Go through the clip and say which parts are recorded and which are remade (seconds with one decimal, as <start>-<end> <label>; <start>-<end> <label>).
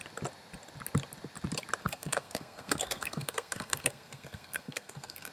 0.0-1.8 recorded; 1.8-5.3 remade